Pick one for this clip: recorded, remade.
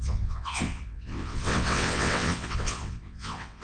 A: remade